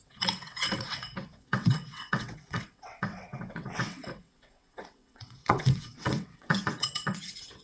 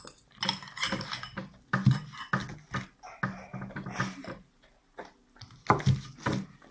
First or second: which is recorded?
second